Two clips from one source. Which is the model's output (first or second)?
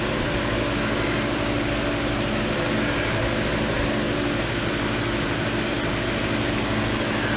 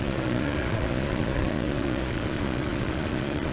second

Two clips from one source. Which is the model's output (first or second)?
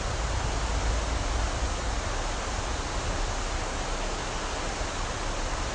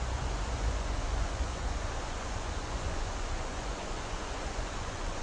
second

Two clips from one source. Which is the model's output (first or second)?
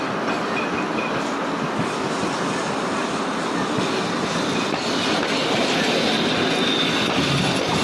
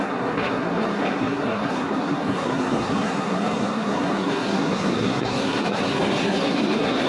second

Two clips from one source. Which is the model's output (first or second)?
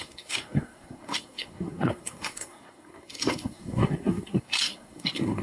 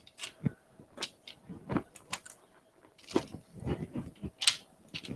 first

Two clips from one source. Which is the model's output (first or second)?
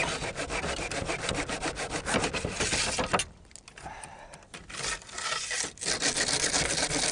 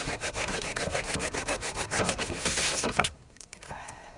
second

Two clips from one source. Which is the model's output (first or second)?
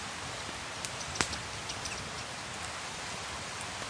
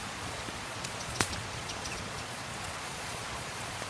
second